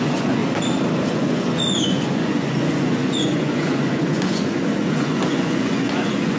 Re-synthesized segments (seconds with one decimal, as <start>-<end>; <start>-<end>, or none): 0.0-0.4; 1.1-6.4